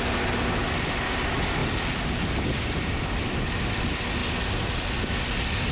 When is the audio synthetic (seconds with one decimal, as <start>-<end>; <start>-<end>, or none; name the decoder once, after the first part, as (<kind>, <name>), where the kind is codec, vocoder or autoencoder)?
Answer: none

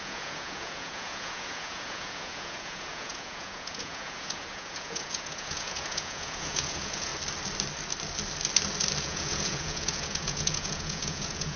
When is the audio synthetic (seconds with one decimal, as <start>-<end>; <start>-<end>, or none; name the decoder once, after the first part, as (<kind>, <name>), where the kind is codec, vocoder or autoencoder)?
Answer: 0.0-7.1 (vocoder, Vocos); 9.0-11.6